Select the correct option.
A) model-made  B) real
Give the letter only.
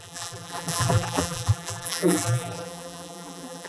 A